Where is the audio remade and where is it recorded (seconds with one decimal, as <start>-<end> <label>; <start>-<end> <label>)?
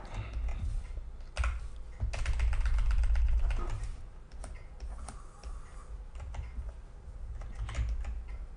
0.0-0.5 recorded; 0.5-1.6 remade; 1.6-5.8 recorded; 5.8-6.8 remade; 6.8-8.6 recorded